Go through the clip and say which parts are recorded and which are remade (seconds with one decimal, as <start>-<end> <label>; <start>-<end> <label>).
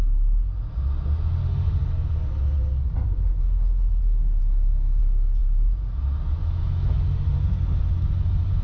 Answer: 0.0-4.4 recorded; 4.4-5.0 remade; 5.0-6.4 recorded; 6.4-7.0 remade; 7.0-8.6 recorded